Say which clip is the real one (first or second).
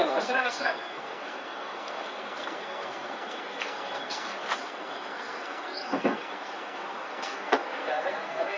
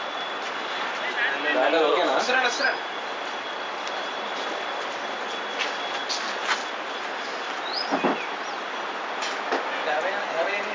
second